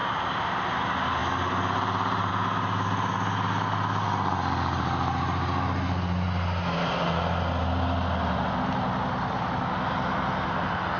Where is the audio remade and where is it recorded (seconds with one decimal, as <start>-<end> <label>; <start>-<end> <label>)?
0.0-11.0 recorded